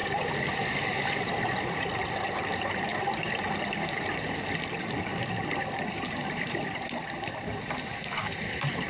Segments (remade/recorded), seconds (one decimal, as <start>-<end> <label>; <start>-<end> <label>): 0.0-2.9 remade; 2.9-4.5 recorded; 4.5-5.1 remade; 5.1-6.6 recorded; 6.6-8.9 remade